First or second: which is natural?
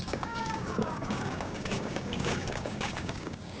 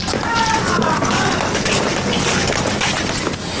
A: second